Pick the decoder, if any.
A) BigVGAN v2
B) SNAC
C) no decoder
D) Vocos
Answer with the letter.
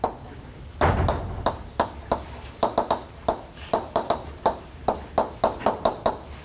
C